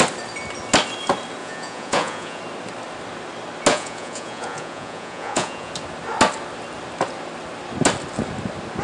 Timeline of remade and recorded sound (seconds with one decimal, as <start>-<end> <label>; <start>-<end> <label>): 0.0-1.4 recorded; 1.4-2.4 remade; 2.4-3.7 recorded; 3.7-5.7 remade; 5.7-8.8 recorded